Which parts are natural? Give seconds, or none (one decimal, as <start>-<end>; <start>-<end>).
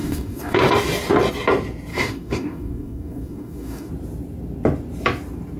0.6-1.9; 3.9-5.6